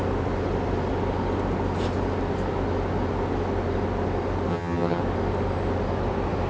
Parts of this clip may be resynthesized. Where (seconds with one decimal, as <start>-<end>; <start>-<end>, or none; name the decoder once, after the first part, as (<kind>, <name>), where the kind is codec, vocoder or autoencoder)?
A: 4.5-5.0 (vocoder, HiFi-GAN)